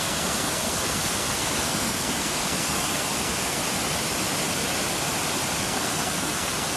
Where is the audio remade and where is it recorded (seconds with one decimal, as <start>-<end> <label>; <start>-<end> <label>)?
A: 0.0-3.6 remade; 3.6-5.6 recorded; 5.6-6.8 remade